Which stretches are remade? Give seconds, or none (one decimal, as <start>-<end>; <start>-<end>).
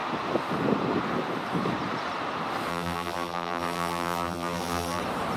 2.7-5.0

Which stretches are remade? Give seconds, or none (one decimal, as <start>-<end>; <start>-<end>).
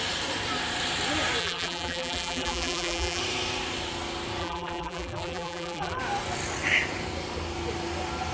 1.4-3.2; 4.4-6.0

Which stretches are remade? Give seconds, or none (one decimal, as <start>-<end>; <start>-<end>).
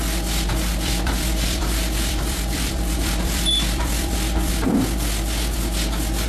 0.7-4.5